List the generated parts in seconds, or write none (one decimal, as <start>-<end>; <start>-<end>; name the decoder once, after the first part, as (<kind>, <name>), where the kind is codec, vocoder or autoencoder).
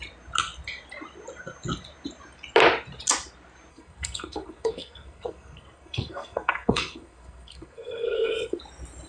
3.7-8.6 (codec, SNAC)